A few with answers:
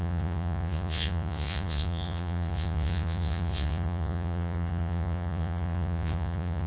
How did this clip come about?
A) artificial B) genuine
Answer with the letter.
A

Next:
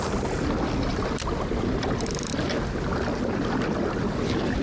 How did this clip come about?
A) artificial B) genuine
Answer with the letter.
B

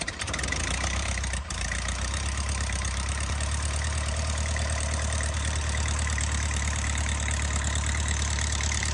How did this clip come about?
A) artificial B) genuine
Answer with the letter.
A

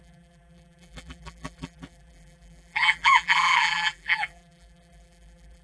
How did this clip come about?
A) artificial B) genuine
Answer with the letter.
A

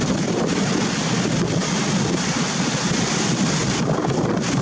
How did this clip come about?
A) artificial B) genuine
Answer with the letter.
B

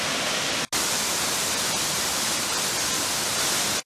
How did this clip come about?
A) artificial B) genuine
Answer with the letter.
B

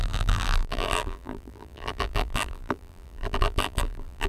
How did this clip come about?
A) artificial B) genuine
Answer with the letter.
A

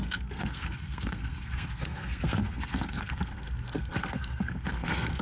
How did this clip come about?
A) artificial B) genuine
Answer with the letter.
A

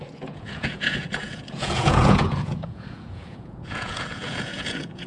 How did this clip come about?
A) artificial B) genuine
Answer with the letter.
A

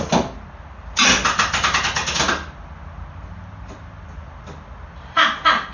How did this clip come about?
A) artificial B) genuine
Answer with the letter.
B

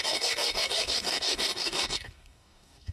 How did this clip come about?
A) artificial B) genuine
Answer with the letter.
A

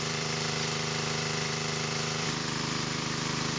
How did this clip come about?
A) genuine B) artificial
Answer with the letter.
B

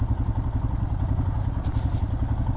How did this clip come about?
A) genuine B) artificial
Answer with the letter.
A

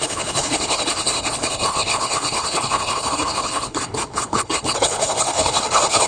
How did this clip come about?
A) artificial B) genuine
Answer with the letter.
A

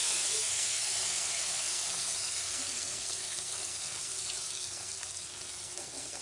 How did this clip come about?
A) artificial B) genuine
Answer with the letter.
A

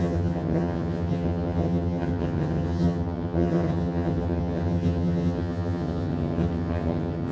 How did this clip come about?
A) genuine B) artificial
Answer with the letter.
B